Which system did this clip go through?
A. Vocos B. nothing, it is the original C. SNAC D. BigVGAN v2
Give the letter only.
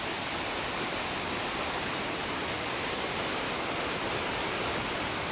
B